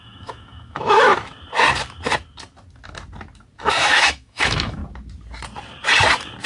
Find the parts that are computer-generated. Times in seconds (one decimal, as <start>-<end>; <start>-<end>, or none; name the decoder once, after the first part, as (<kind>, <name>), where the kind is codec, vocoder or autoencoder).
0.0-1.1 (autoencoder, DAC-VAE); 3.6-4.8